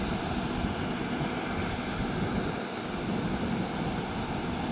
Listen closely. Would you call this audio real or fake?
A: real